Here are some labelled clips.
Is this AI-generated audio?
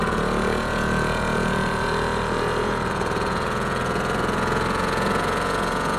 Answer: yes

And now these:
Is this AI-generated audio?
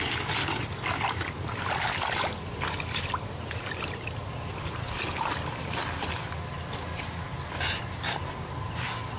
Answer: yes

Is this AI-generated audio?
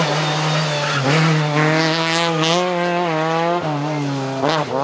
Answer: no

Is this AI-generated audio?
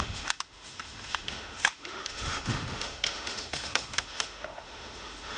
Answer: yes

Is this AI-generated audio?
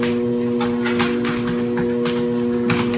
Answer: no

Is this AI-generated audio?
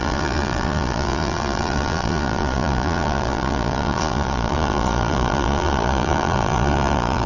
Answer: yes